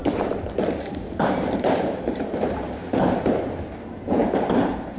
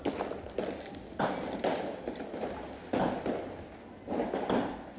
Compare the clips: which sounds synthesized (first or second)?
first